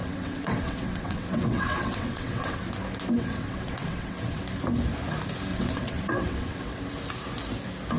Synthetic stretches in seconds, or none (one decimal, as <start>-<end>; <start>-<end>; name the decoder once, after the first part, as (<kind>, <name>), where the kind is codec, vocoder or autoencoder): 0.0-2.6 (vocoder, WaveNeXt); 3.2-4.4; 5.5-6.8